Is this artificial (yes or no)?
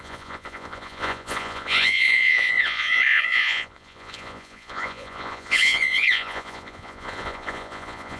yes